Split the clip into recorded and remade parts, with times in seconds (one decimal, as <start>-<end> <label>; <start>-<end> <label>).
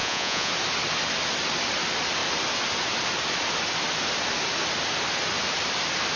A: 0.0-0.5 remade; 0.5-6.2 recorded